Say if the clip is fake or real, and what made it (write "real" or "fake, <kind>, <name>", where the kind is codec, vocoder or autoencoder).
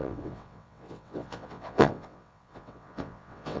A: fake, vocoder, WaveNeXt